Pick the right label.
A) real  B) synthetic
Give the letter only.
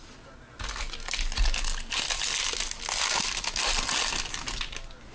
A